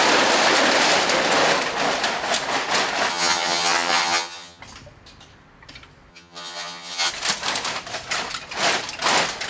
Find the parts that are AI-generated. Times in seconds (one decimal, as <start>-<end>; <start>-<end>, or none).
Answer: 3.1-4.6; 6.1-7.1